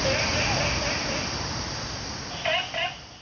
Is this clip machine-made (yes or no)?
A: no